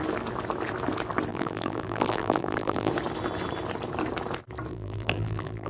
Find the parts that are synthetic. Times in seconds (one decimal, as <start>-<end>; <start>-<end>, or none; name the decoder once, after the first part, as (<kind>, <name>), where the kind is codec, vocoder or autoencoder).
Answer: 1.3-2.9 (vocoder, BigVGAN v2); 4.7-5.7